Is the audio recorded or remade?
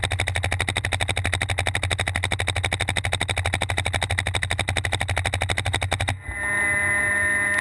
recorded